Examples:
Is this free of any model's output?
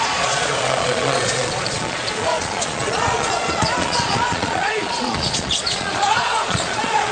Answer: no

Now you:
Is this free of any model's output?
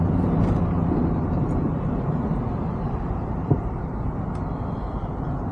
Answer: no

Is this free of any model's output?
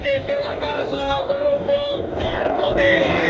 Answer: no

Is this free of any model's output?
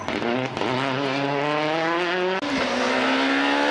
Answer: yes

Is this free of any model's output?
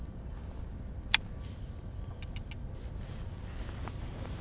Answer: yes